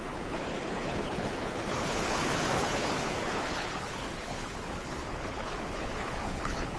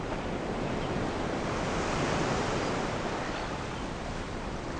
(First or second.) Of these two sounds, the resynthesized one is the first